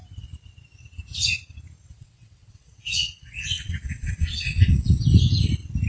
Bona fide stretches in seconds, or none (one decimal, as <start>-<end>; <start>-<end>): 0.0-1.9; 5.0-5.9